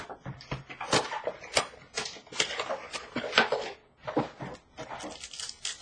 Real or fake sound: real